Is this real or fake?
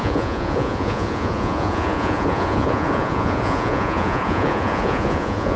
fake